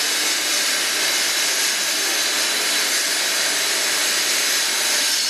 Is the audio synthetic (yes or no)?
no